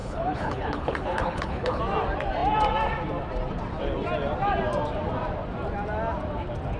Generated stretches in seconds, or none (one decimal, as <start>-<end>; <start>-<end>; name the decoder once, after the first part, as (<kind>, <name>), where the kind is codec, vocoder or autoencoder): 0.0-1.8 (codec, HILCodec)